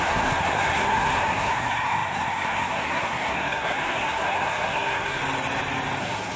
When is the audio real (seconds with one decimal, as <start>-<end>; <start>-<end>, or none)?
5.2-6.0